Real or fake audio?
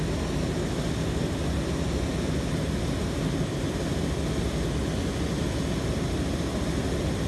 real